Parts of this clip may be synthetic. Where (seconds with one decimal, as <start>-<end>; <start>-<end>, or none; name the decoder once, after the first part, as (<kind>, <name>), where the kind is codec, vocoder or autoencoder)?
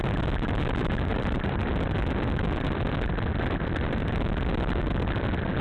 1.1-1.7 (vocoder, BigVGAN v2)